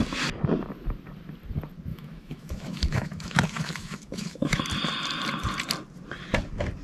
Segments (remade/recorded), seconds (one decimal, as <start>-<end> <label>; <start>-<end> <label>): 0.0-1.9 recorded; 1.9-4.6 remade; 4.6-6.8 recorded